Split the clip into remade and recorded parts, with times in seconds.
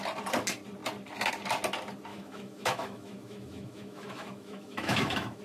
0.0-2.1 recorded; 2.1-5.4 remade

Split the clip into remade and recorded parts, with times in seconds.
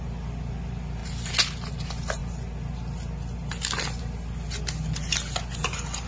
0.0-6.1 recorded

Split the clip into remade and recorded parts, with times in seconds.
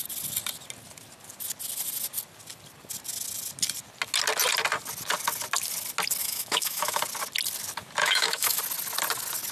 0.0-6.2 recorded; 6.2-7.0 remade; 7.0-8.0 recorded; 8.0-8.6 remade; 8.6-9.5 recorded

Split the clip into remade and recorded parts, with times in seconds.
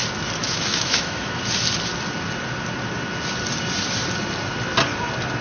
0.0-0.4 recorded; 0.4-1.4 remade; 1.4-5.4 recorded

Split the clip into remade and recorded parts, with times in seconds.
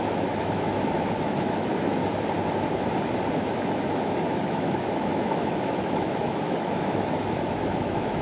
0.0-2.0 remade; 2.0-3.4 recorded; 3.4-8.2 remade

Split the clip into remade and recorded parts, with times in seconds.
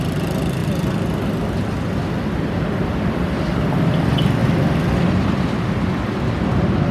0.0-6.9 recorded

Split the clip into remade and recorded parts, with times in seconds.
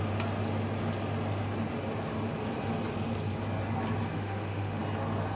0.0-4.1 recorded; 4.1-4.8 remade; 4.8-5.4 recorded